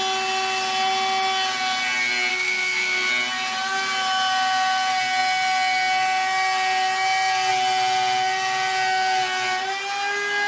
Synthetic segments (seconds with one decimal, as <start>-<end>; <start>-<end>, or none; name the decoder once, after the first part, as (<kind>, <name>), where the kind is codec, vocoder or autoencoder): 2.3-3.1 (codec, SNAC)